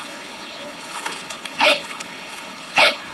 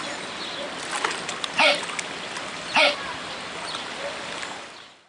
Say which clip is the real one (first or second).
second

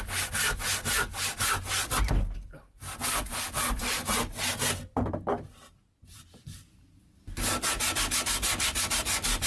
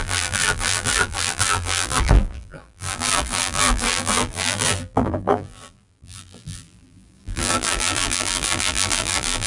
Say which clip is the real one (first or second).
first